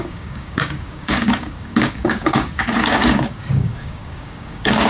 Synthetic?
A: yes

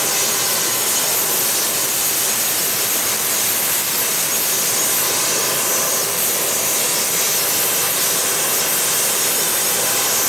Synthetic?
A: no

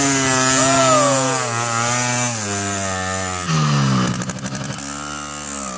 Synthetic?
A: no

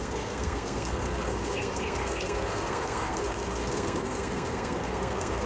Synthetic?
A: yes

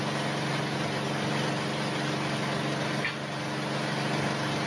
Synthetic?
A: no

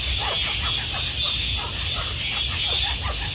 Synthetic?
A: no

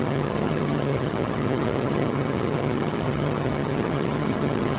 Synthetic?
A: yes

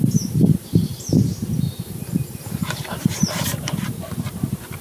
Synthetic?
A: yes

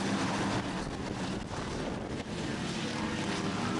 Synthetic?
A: no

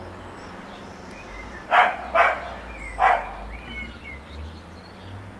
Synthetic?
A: no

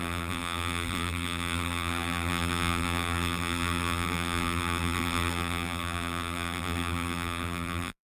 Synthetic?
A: yes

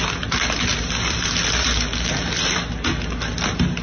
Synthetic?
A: no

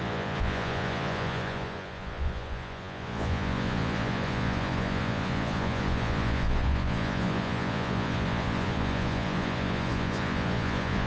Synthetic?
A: yes